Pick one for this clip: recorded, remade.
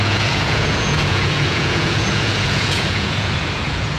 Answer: remade